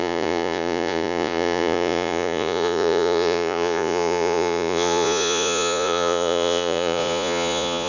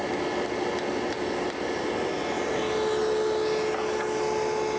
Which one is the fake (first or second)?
first